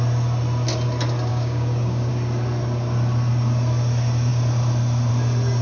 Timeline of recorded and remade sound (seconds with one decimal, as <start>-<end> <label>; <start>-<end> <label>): 0.0-1.3 recorded; 1.3-2.1 remade; 2.1-5.6 recorded